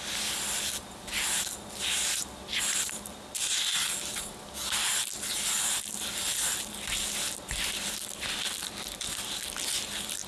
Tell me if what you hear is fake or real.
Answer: real